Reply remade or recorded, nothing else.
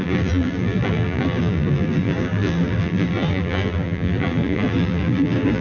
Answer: remade